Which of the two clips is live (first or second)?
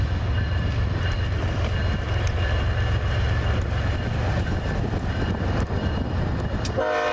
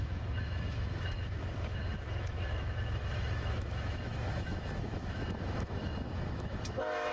first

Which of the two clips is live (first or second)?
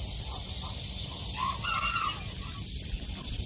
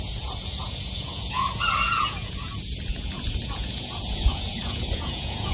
first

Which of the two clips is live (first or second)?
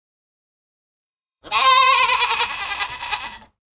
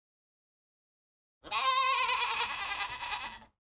second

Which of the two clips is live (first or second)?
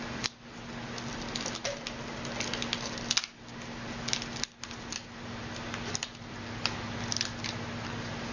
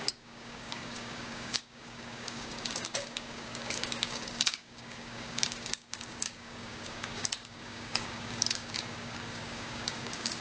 first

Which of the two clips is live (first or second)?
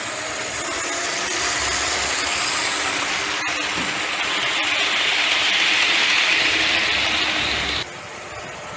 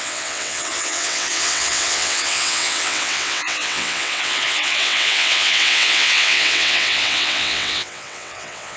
first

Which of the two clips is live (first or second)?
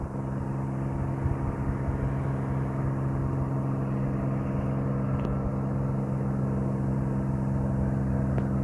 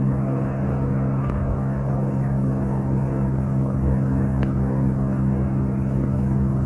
first